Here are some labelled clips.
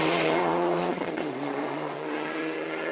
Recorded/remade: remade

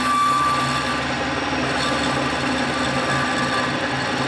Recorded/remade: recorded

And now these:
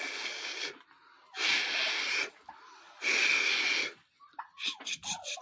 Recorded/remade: recorded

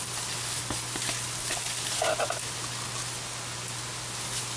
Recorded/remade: recorded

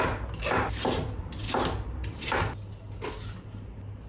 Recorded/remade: recorded